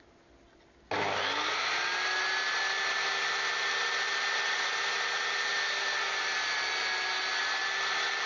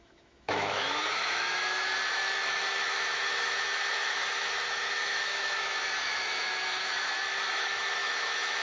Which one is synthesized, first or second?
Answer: second